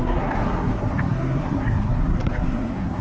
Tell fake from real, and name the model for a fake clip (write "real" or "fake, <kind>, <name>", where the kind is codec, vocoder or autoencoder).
fake, codec, SNAC